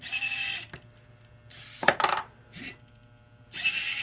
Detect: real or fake real